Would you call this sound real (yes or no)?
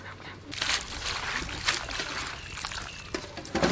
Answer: yes